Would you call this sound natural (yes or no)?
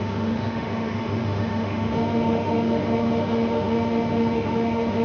no